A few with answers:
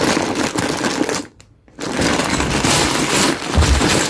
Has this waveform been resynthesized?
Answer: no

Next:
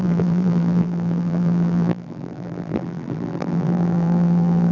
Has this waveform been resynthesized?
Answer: yes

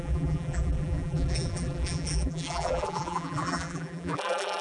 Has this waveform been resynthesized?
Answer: yes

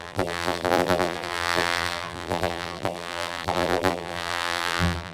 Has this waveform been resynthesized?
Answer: yes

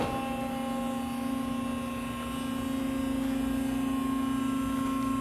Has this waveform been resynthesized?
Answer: no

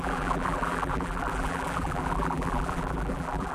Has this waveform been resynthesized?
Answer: yes